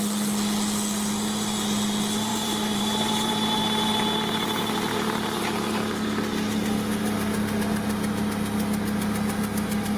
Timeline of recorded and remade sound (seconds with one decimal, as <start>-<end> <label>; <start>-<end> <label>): 0.0-2.3 recorded; 2.3-3.6 remade; 3.6-10.0 recorded